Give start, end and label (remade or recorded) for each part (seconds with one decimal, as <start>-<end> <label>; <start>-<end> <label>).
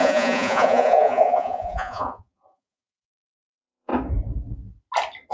0.0-3.9 remade; 3.9-5.3 recorded